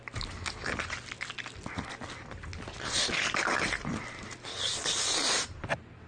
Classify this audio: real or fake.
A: real